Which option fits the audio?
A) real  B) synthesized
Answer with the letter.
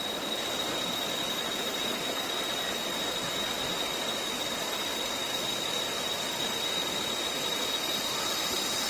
A